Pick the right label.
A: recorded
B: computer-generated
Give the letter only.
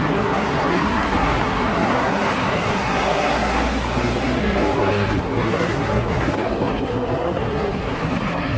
B